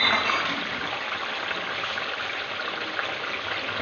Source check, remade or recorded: recorded